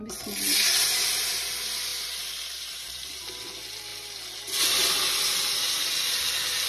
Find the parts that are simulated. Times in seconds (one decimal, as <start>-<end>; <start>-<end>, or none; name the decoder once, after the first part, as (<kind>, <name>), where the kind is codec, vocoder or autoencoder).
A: 1.9-3.1 (vocoder, BigVGAN v2)